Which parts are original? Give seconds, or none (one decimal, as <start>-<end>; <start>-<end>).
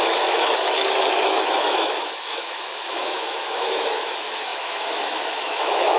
none